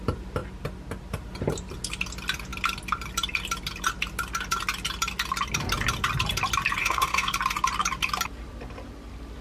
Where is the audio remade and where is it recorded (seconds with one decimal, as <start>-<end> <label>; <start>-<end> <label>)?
0.0-6.8 recorded; 6.8-7.3 remade; 7.3-9.4 recorded